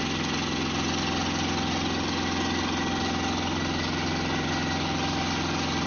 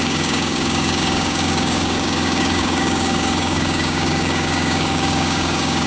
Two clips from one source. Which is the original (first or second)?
first